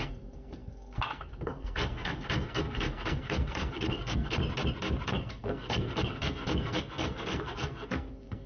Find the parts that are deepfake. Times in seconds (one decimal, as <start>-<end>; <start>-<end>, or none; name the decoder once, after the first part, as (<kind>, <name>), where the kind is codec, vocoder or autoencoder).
0.0-4.4 (codec, SNAC); 5.1-8.5